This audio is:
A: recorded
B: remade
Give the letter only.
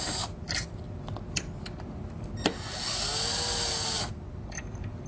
A